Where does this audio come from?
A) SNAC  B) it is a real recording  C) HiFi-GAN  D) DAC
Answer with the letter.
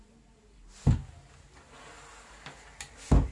B